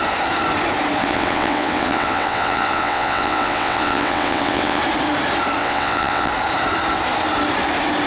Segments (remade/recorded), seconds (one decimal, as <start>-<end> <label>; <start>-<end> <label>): 0.0-1.0 recorded; 1.0-4.8 remade; 4.8-5.6 recorded; 5.6-6.3 remade; 6.3-8.1 recorded